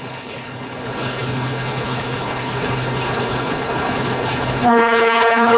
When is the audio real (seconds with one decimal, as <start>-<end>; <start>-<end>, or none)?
none